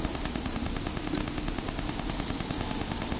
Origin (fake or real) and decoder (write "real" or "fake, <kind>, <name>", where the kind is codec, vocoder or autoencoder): real